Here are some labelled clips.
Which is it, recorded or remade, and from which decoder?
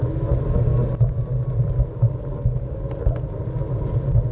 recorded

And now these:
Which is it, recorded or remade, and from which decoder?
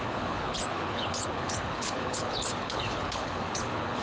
remade, codec, HILCodec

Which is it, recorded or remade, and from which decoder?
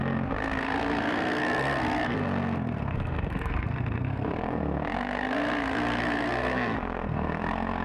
remade, codec, SNAC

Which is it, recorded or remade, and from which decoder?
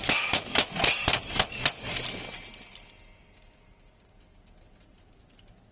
recorded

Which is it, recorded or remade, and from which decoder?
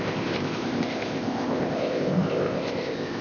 remade, codec, ZipCodec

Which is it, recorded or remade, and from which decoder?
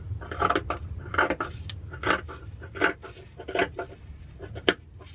recorded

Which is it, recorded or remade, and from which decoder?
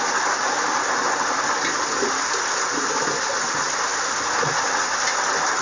recorded